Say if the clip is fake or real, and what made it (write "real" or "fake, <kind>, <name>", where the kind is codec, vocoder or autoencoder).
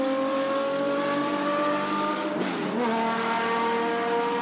real